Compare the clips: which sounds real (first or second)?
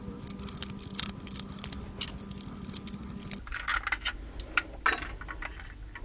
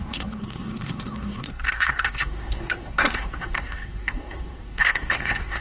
first